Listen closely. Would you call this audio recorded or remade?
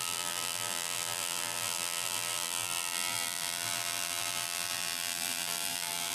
remade